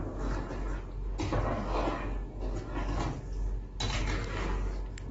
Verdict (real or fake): real